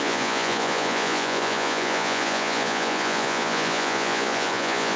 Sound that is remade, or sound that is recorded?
remade